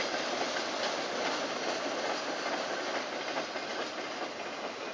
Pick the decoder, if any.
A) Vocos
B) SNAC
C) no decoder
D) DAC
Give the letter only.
C